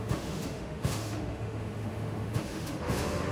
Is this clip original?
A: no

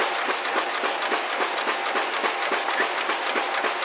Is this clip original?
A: yes